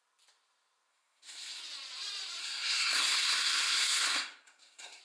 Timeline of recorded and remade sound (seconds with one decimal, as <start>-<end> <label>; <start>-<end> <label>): 0.0-0.9 recorded; 0.9-1.6 remade; 1.6-2.4 recorded; 2.4-5.0 remade